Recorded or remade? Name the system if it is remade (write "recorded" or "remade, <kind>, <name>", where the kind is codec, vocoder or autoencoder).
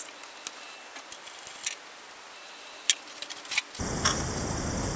recorded